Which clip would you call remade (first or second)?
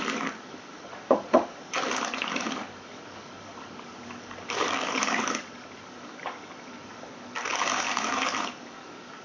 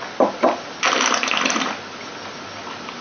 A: first